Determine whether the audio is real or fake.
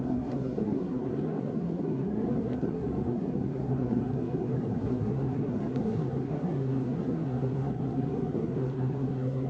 fake